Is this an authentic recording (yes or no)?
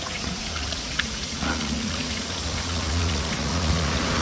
no